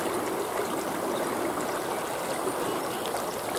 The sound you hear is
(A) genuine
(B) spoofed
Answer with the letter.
A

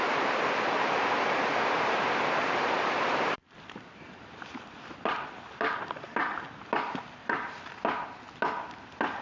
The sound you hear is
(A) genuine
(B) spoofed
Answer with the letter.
B